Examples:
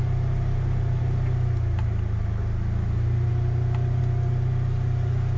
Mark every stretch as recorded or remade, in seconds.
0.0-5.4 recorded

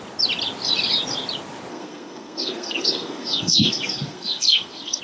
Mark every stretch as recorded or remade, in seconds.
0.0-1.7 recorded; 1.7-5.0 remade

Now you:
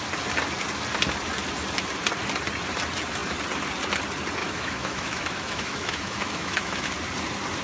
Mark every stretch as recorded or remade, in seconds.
0.0-4.4 recorded; 4.4-6.9 remade; 6.9-7.6 recorded

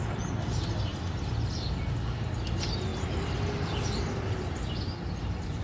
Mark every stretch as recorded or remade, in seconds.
0.0-5.6 recorded